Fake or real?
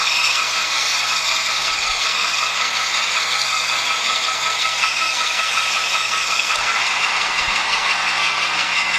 fake